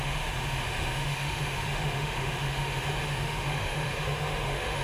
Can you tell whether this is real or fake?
fake